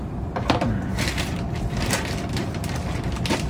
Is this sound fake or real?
real